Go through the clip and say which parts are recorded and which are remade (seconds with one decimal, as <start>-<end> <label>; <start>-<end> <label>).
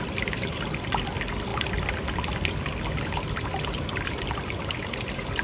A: 0.0-5.4 recorded